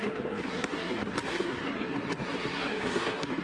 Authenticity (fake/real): fake